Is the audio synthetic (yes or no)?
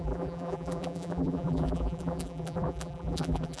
yes